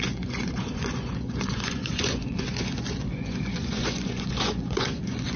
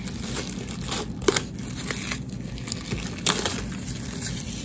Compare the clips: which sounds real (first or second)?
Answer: second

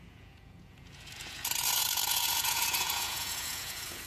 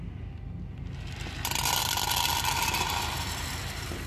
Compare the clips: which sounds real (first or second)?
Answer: second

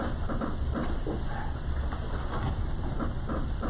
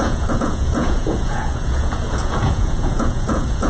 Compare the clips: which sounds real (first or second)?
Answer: first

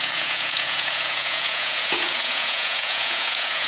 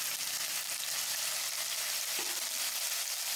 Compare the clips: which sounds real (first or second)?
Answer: second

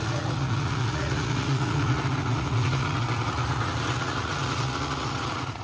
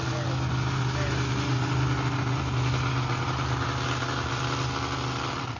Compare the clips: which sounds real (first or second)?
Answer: second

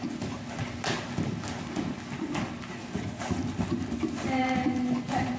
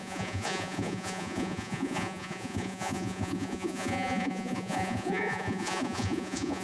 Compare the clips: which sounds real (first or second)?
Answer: first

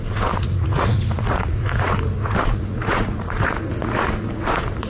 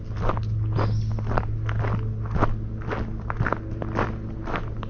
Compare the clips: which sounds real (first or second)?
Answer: second